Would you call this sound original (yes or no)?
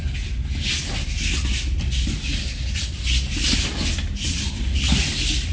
yes